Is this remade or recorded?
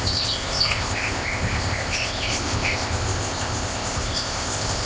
remade